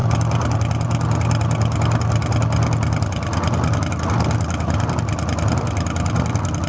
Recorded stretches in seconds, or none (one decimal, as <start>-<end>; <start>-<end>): 0.0-6.7